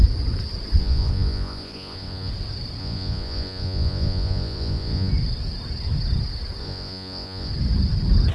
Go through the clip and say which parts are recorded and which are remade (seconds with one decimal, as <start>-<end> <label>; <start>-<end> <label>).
0.0-0.8 recorded; 0.8-2.3 remade; 2.3-2.8 recorded; 2.8-5.1 remade; 5.1-6.6 recorded; 6.6-7.5 remade; 7.5-8.3 recorded